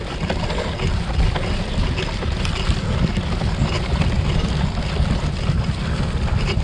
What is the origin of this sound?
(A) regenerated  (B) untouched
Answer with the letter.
B